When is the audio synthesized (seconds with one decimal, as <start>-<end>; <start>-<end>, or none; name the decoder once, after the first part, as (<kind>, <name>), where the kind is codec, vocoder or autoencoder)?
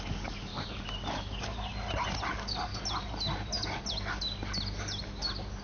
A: 0.0-0.5 (codec, DAC); 1.1-1.7; 2.3-2.7